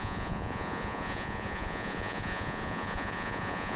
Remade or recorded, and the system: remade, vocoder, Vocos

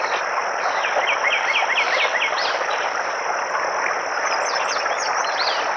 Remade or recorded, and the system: recorded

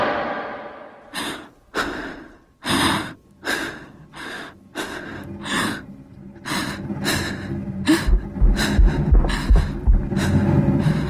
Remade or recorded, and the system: recorded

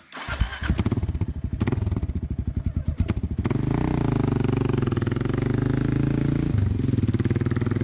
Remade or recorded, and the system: recorded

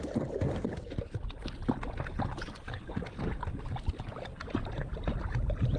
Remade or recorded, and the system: recorded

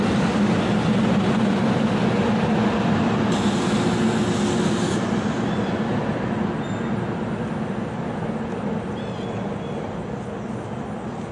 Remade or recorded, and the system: recorded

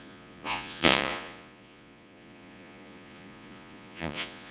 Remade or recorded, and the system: remade, vocoder, Vocos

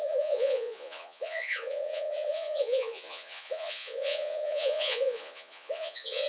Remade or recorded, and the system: remade, vocoder, Vocos